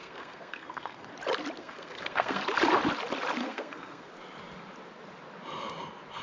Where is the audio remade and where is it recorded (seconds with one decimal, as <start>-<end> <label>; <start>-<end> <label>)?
0.0-1.1 remade; 1.1-1.6 recorded; 1.6-2.4 remade; 2.4-3.4 recorded; 3.4-4.1 remade; 4.1-6.2 recorded